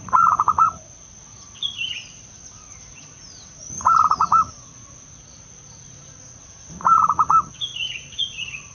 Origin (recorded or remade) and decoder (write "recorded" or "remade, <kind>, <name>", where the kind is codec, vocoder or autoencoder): remade, vocoder, Vocos